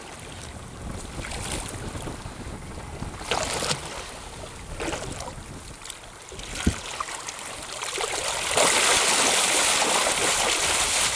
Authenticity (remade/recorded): recorded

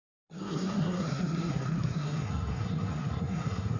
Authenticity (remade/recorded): remade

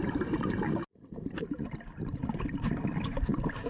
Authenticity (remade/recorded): recorded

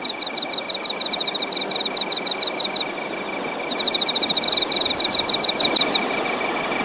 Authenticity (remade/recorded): recorded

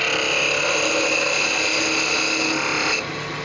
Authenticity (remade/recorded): recorded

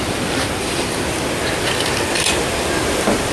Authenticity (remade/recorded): recorded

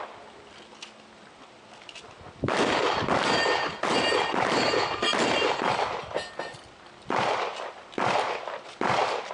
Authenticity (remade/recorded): recorded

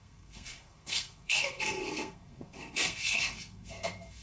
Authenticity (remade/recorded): remade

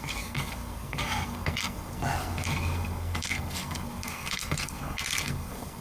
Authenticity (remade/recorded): remade